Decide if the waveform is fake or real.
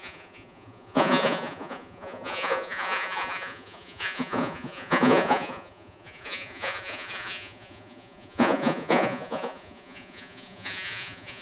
fake